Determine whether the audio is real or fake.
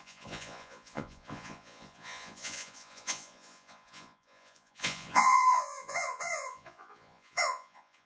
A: fake